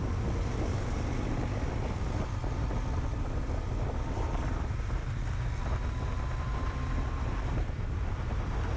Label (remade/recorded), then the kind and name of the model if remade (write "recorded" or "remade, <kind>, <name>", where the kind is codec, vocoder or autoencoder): recorded